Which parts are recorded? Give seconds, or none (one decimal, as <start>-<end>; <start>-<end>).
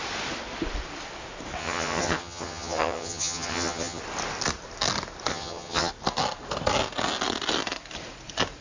0.0-1.6; 4.0-5.3; 5.9-8.6